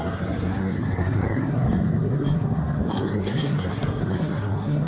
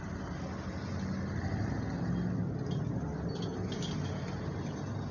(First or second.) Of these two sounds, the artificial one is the first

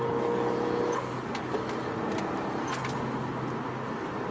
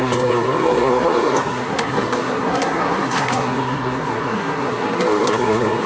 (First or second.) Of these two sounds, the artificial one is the second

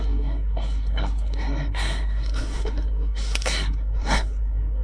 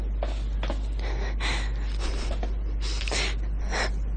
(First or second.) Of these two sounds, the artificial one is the first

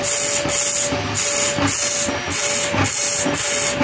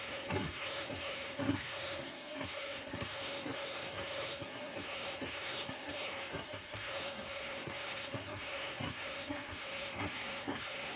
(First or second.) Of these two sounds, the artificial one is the second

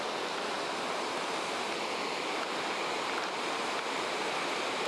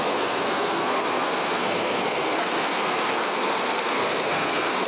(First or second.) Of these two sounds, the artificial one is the second